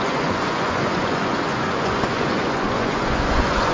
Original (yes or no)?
no